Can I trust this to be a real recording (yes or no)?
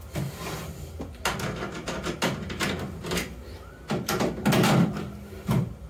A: yes